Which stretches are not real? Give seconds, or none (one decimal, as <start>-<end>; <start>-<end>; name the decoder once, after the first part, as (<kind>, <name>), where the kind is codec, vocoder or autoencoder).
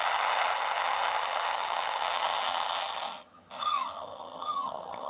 0.0-5.1 (vocoder, HiFi-GAN)